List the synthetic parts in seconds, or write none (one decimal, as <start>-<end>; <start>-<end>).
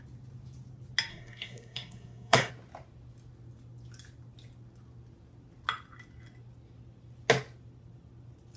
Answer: 1.1-2.5